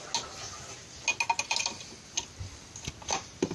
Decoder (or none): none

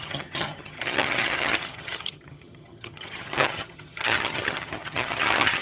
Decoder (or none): vocoder, HiFi-GAN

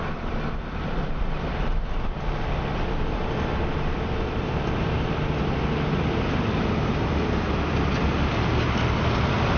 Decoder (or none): none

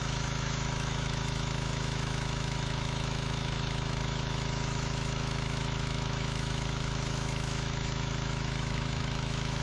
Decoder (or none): autoencoder, DAC-VAE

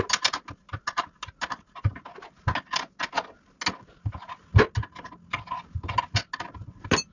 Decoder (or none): none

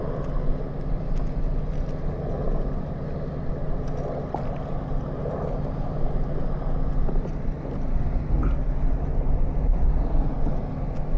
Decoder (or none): none